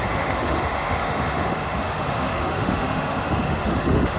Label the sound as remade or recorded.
remade